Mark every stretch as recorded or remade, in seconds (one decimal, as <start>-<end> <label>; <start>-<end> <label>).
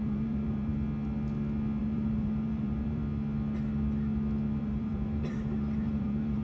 0.0-0.7 remade; 0.7-1.8 recorded; 1.8-3.0 remade; 3.0-4.6 recorded; 4.6-6.4 remade